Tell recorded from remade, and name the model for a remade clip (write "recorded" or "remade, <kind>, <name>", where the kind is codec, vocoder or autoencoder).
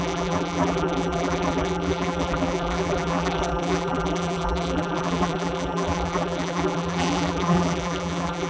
remade, vocoder, BigVGAN v2